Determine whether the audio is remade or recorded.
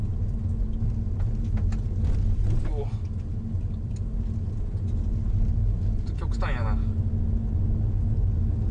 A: recorded